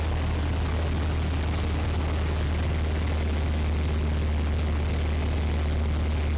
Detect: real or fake real